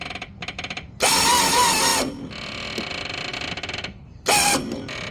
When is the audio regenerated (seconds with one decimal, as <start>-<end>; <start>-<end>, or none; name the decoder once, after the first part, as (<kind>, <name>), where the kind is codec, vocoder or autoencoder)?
none